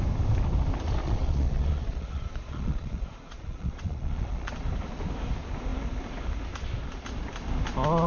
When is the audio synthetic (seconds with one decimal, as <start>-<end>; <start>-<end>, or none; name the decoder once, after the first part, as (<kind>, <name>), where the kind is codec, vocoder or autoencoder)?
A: 1.0-4.5 (vocoder, Vocos)